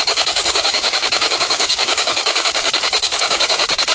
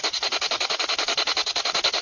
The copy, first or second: first